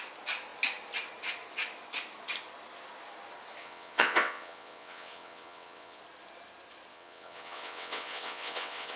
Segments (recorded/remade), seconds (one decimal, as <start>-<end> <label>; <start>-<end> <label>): 0.0-3.6 recorded; 3.6-6.0 remade; 6.0-6.9 recorded; 6.9-9.0 remade